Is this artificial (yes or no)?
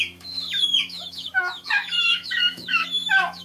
yes